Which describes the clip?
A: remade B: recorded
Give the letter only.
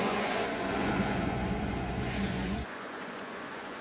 A